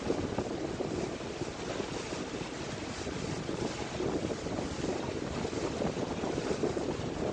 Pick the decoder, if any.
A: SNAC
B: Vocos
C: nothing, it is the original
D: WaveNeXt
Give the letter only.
C